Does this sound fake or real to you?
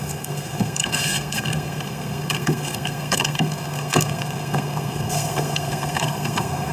fake